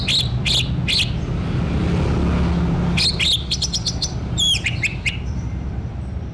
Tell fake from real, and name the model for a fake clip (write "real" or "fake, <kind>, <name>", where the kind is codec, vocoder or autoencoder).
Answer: real